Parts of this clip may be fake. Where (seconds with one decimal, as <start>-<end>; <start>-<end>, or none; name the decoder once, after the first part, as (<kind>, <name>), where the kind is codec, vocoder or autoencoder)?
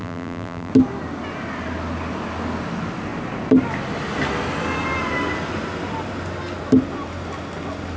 0.0-0.7 (vocoder, BigVGAN v2)